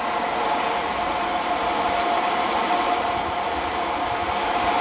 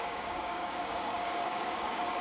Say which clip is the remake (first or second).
second